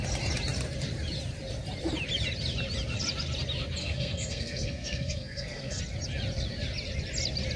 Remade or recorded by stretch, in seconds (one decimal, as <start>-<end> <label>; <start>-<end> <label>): 0.0-3.8 recorded; 3.8-5.8 remade; 5.8-7.6 recorded